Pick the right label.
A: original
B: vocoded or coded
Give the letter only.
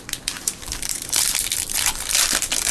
B